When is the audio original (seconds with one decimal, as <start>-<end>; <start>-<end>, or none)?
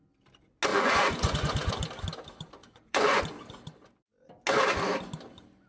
0.0-0.7; 1.7-2.6; 3.2-5.7